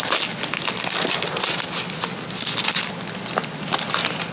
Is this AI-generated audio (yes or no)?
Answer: no